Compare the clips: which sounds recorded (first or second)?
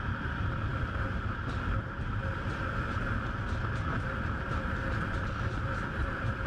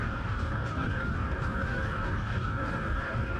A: first